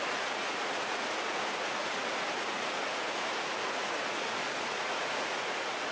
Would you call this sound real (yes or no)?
no